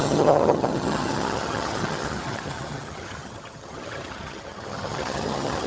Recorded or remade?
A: remade